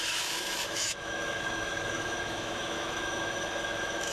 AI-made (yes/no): yes